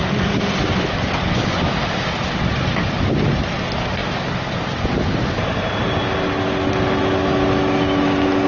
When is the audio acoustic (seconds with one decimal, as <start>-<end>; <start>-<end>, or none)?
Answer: 0.0-8.5